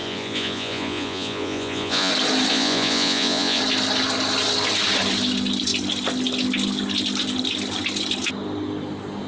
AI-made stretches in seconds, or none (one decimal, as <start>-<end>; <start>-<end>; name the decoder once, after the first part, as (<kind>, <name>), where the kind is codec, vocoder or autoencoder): 0.0-2.1 (vocoder, Vocos); 2.5-3.6